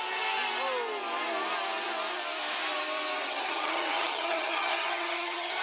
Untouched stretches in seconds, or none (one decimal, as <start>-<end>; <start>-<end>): 0.0-3.2